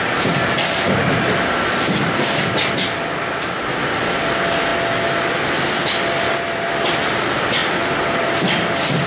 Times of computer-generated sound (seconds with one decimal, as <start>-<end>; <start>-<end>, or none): 0.0-4.7; 5.3-9.1